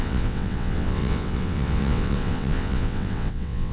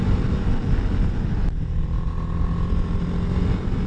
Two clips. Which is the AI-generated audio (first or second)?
first